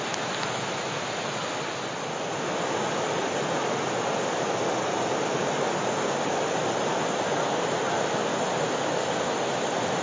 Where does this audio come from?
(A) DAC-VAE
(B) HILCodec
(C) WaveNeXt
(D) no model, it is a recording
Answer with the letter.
D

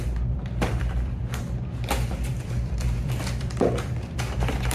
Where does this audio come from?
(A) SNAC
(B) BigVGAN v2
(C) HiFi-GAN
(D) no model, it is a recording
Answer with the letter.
B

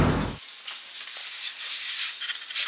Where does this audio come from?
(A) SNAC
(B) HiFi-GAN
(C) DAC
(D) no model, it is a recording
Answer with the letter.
D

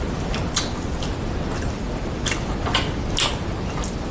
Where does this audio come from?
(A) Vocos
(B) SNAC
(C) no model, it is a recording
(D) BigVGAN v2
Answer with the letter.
C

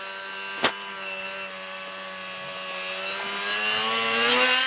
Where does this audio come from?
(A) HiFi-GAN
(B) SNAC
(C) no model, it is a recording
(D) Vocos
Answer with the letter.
C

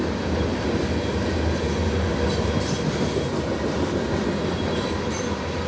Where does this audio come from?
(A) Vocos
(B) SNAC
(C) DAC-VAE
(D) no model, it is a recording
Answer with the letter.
D